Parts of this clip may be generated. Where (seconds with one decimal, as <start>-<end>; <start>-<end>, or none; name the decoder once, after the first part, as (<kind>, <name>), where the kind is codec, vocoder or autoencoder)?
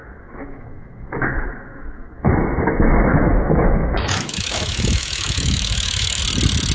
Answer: 0.0-2.3 (autoencoder, DAC-VAE); 3.1-6.2